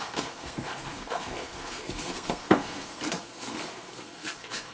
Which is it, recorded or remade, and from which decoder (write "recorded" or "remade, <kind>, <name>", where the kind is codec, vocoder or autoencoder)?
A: remade, codec, SNAC